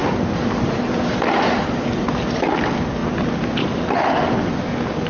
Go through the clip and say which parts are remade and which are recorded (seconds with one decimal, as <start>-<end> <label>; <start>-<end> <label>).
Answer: 0.0-5.1 recorded

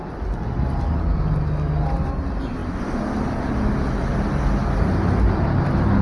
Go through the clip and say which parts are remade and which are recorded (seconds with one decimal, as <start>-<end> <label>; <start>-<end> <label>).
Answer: 0.0-6.0 recorded

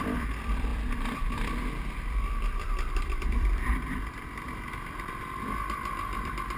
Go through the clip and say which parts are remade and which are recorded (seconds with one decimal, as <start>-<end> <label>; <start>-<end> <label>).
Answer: 0.0-6.6 remade